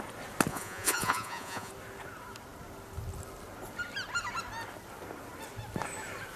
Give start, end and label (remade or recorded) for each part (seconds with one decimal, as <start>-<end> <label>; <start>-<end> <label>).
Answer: 0.0-0.5 recorded; 0.5-1.7 remade; 1.7-6.4 recorded